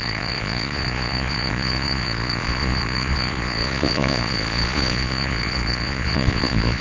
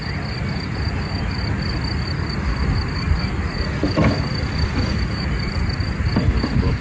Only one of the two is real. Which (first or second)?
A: second